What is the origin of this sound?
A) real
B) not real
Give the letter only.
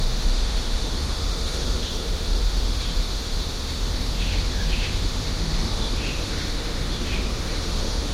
B